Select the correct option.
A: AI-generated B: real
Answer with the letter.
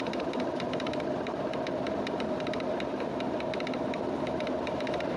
B